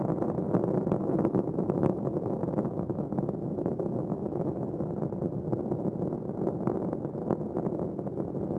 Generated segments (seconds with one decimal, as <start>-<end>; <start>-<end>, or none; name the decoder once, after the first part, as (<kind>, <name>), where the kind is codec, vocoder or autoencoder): 1.0-4.9 (autoencoder, DAC-VAE)